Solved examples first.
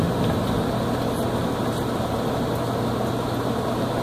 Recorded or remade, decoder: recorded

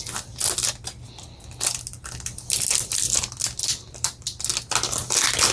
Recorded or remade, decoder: recorded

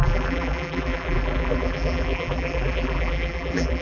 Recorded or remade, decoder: remade, vocoder, BigVGAN v2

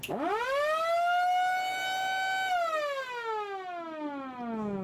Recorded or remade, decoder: recorded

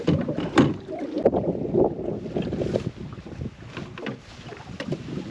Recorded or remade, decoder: recorded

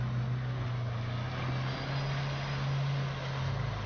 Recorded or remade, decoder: recorded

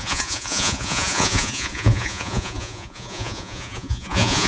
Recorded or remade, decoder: remade, vocoder, Vocos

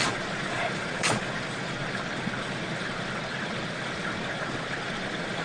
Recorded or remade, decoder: remade, vocoder, Vocos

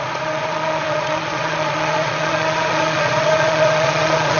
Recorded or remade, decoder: remade, vocoder, Vocos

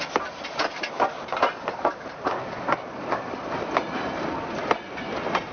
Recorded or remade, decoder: recorded